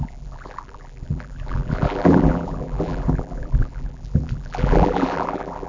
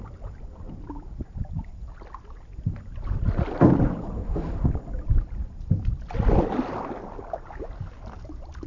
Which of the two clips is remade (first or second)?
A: first